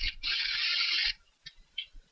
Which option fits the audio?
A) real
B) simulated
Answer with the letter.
B